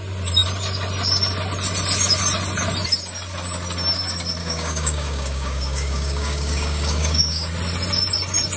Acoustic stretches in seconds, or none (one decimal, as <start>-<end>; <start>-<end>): 0.0-4.4; 7.5-8.6